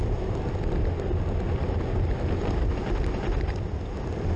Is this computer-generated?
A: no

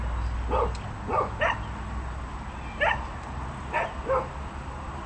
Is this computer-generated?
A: no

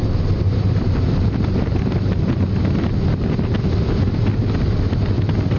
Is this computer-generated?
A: no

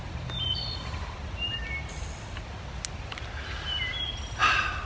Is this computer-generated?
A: no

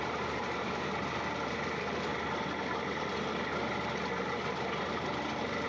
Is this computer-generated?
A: no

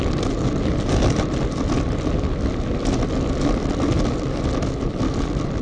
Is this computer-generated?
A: no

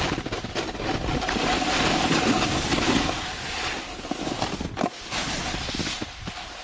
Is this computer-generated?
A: no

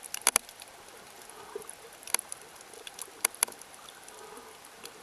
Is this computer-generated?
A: yes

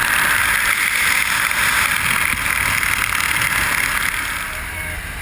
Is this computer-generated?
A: no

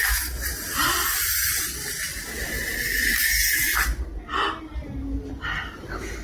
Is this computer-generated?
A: no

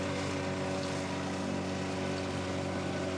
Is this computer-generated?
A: no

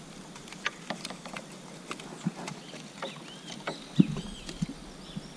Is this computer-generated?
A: no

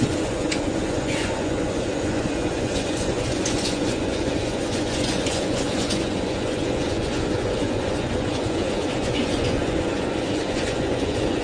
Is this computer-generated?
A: yes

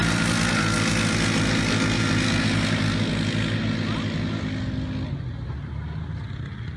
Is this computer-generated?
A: no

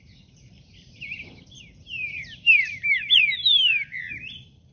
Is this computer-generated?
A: yes